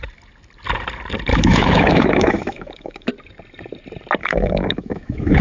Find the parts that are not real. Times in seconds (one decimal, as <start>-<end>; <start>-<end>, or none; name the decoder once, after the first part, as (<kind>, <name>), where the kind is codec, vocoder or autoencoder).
1.3-3.1 (autoencoder, DAC-VAE); 4.2-5.4